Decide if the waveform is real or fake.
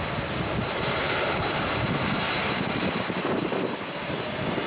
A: real